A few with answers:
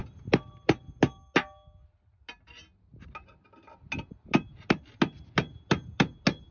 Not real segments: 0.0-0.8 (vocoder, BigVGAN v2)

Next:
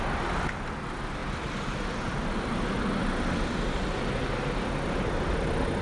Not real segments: none

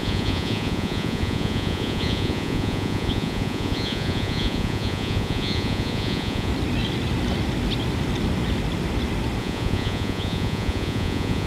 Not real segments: 0.0-6.5 (vocoder, Vocos); 9.4-11.5